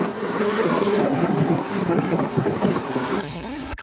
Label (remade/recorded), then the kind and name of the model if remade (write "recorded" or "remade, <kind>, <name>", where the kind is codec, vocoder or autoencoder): remade, codec, SNAC